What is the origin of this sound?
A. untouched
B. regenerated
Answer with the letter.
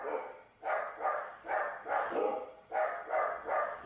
A